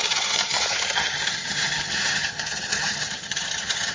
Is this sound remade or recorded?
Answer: remade